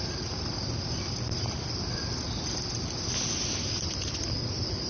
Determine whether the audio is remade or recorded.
recorded